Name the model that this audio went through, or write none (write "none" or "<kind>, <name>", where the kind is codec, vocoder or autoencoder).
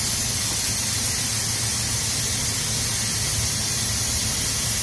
none